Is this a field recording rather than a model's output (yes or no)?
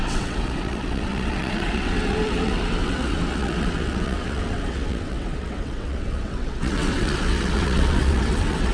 no